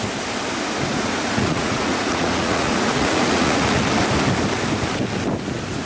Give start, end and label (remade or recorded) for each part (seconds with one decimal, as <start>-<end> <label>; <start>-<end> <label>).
0.0-0.9 recorded; 0.9-3.8 remade; 3.8-5.9 recorded